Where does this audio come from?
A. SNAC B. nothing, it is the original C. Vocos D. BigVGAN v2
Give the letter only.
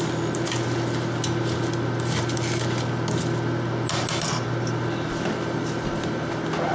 B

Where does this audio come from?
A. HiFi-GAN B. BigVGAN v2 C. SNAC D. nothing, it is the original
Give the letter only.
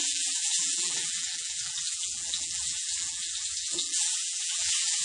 B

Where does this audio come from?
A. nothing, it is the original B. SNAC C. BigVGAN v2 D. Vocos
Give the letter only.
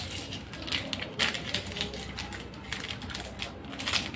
A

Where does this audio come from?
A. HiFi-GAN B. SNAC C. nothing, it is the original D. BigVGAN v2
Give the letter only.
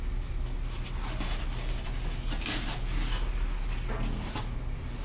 C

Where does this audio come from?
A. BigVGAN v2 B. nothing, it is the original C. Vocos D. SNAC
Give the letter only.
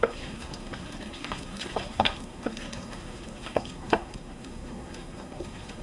D